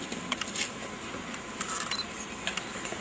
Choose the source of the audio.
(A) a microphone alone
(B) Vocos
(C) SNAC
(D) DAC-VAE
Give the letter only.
A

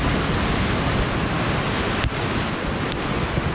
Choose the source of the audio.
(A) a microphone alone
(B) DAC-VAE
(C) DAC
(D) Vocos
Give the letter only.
A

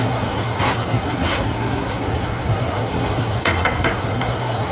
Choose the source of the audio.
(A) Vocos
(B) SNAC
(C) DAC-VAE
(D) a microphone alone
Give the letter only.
B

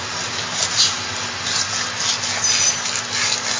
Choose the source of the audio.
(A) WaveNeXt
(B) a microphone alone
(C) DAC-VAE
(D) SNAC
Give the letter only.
B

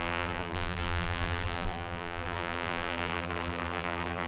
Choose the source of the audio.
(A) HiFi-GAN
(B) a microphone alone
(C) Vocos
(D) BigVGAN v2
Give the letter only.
D